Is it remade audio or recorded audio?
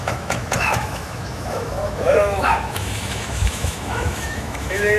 remade